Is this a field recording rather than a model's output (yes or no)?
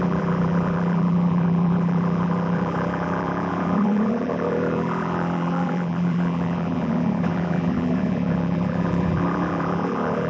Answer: no